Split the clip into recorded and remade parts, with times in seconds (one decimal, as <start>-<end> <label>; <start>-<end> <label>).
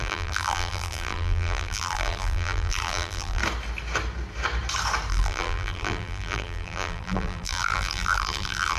0.0-3.4 remade; 3.4-5.1 recorded; 5.1-8.8 remade